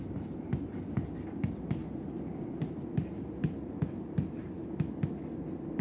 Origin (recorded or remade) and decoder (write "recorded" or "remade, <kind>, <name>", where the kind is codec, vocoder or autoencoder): recorded